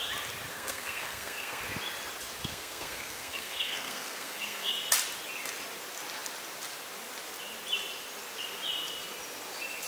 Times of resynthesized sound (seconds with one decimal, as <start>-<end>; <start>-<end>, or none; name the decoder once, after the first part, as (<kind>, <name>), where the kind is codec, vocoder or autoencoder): 0.5-1.6 (codec, SNAC); 2.4-4.7